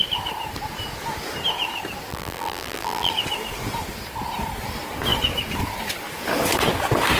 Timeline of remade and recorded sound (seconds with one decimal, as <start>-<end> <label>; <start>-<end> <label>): 0.0-2.1 recorded; 2.1-3.1 remade; 3.1-7.2 recorded